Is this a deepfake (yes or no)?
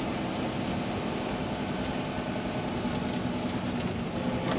no